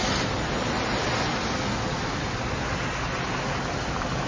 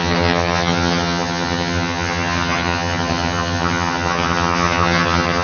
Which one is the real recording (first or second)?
first